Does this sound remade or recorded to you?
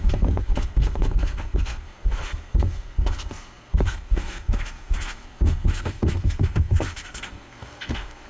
remade